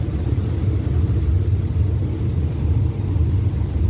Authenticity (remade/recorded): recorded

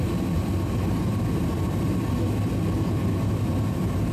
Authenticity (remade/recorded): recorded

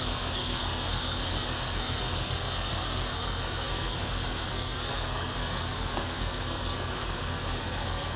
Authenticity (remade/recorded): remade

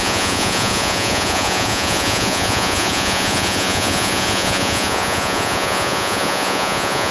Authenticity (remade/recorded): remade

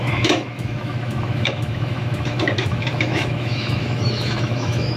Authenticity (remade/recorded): remade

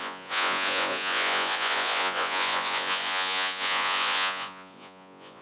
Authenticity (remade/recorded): remade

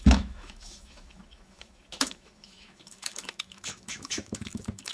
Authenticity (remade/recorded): remade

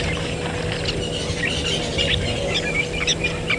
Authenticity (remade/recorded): recorded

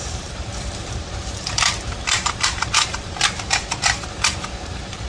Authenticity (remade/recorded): remade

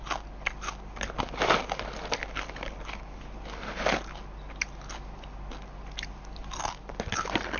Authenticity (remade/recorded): recorded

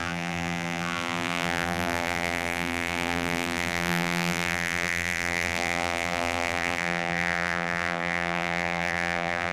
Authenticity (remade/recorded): remade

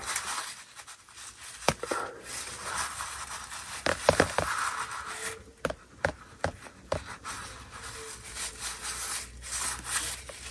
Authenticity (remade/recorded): recorded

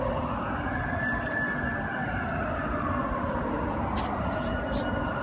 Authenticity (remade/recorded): recorded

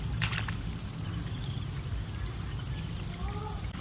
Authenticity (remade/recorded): recorded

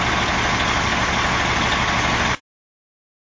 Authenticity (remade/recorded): recorded